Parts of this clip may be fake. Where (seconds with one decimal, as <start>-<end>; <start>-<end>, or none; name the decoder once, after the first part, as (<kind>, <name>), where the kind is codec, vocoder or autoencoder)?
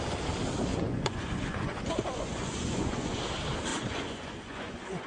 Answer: 0.7-3.2 (vocoder, Vocos); 3.7-5.1